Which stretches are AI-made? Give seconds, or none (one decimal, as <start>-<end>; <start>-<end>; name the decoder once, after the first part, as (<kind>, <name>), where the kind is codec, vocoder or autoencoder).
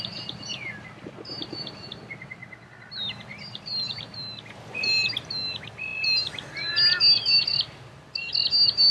none